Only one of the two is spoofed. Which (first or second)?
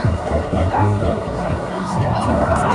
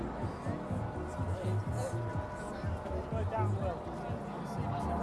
first